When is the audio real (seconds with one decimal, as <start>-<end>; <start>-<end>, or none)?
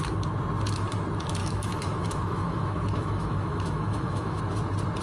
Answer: 0.0-1.4; 4.4-5.0